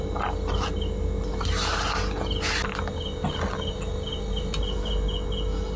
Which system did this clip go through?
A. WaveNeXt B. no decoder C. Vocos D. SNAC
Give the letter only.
B